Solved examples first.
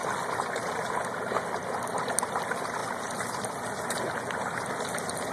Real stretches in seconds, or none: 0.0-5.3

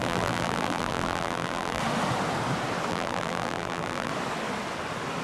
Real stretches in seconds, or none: 1.8-2.9; 4.1-5.2

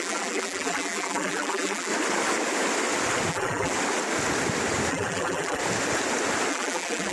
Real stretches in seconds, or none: 1.9-3.3; 3.7-4.9; 5.6-6.5

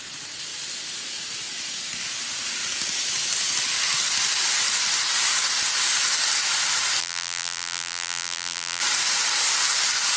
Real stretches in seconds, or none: 0.0-7.0; 8.8-10.2

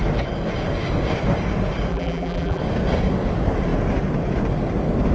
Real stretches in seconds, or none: 0.0-1.9; 2.6-5.1

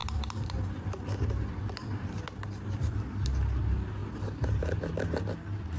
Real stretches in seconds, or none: 3.0-5.8